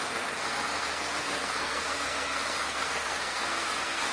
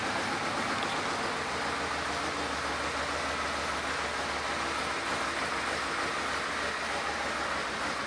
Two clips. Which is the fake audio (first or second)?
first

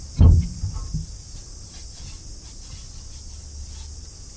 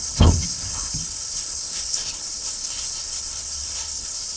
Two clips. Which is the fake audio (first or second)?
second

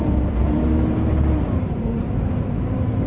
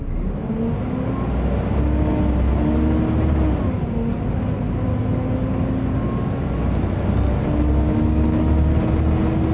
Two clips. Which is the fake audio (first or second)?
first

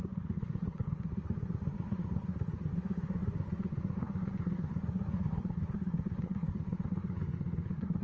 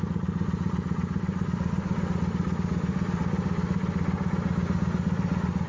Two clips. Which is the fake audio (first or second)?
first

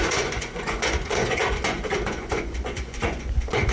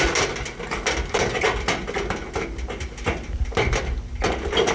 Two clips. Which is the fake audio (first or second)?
first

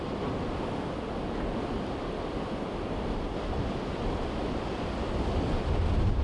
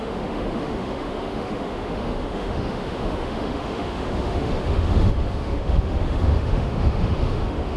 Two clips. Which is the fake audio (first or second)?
second